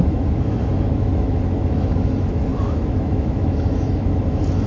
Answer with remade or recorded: remade